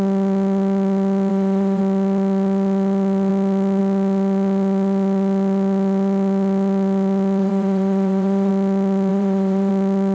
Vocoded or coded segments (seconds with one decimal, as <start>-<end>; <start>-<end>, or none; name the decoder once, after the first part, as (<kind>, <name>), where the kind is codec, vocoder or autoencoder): 1.3-1.8 (vocoder, WaveNeXt); 7.4-8.5; 9.1-9.7